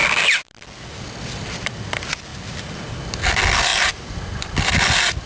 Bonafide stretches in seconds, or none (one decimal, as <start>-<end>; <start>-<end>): 0.0-5.3